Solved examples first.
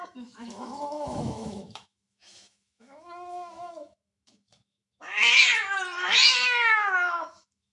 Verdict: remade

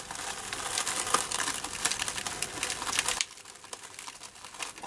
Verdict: recorded